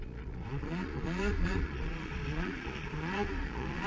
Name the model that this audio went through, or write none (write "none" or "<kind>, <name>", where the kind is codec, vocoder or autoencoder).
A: vocoder, Vocos